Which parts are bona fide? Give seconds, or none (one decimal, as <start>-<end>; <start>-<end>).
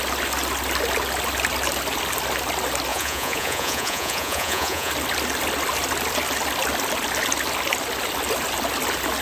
0.0-2.9; 4.9-9.2